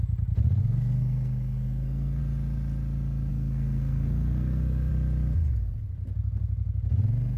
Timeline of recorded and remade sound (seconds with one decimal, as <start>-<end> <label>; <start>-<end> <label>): 0.0-0.6 recorded; 0.6-2.2 remade; 2.2-3.3 recorded; 3.3-4.9 remade; 4.9-7.4 recorded